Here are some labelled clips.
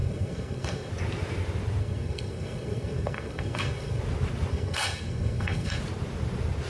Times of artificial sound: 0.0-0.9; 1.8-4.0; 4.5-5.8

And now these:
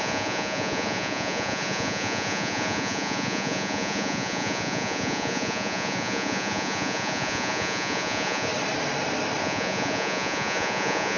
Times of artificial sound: 0.0-8.5; 9.4-11.2

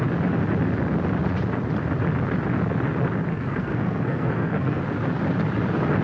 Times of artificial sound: 3.3-4.8

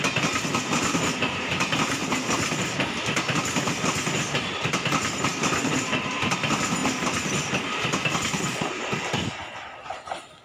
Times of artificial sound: none

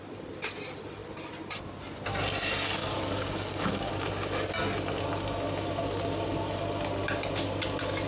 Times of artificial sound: 2.8-3.9

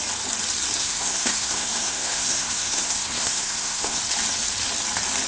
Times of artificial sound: 0.8-4.0

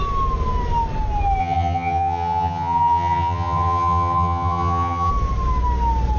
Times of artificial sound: 1.4-5.1